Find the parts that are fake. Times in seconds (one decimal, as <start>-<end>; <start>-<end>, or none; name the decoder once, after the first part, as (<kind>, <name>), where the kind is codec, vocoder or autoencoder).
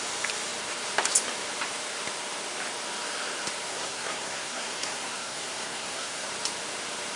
3.7-6.3 (codec, SNAC)